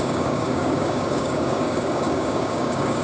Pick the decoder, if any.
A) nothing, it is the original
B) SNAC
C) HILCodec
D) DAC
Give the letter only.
D